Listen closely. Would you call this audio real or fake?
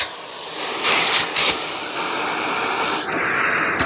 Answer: real